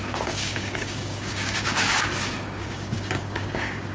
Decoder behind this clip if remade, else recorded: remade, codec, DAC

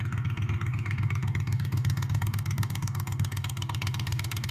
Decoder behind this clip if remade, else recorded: remade, codec, DAC